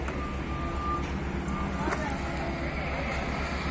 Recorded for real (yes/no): yes